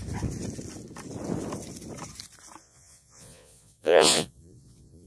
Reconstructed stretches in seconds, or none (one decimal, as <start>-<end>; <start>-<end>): 2.6-5.1